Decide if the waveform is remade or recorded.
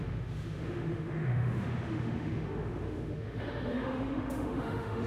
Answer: remade